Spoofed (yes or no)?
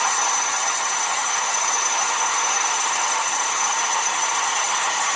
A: yes